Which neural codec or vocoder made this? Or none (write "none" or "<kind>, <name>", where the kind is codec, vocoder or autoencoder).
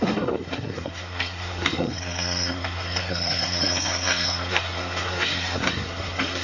codec, SNAC